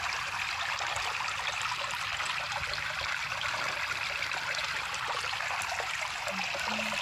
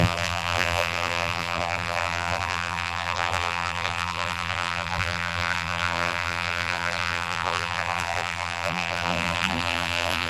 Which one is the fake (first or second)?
second